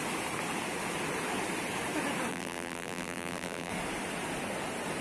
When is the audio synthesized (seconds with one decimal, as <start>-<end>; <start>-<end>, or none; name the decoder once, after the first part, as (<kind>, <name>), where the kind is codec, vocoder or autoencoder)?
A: 2.3-3.7 (vocoder, BigVGAN v2)